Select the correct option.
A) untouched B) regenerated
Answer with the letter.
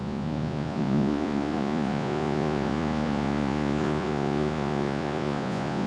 B